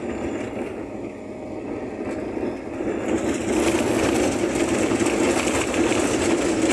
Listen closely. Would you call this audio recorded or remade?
recorded